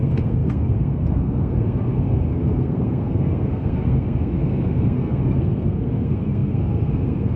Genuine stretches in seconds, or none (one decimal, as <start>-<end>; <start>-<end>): none